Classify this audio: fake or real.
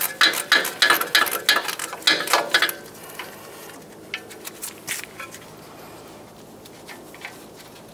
real